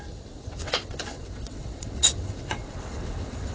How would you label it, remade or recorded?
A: remade